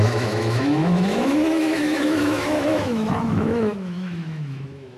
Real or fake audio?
fake